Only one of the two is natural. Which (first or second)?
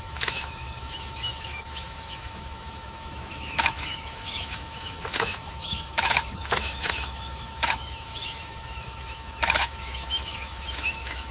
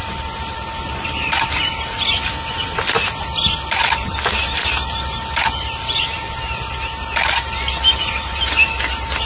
second